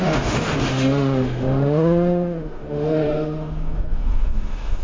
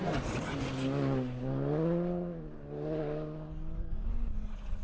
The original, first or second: second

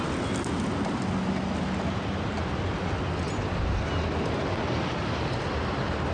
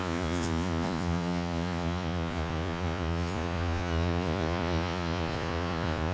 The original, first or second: first